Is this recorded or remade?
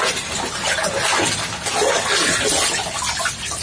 recorded